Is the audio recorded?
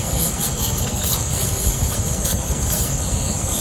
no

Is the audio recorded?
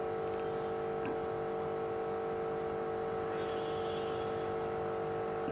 yes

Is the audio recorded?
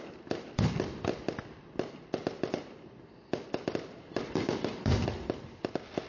yes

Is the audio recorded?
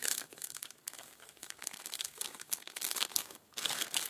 no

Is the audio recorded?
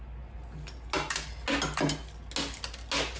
yes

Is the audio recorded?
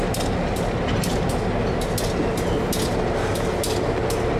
yes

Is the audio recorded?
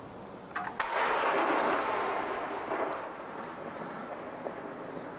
yes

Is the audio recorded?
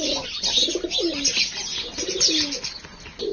yes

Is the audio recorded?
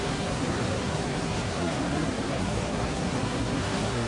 no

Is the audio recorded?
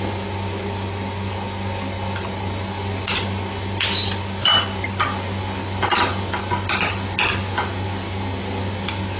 yes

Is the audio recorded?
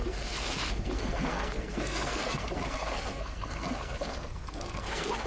no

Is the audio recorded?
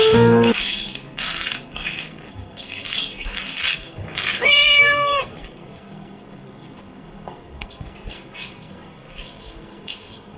no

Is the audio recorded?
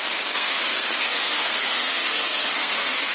no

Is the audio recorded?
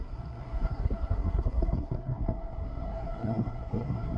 no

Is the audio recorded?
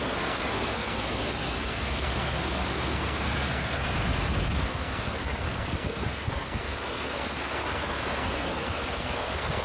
no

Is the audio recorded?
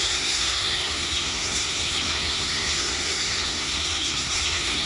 no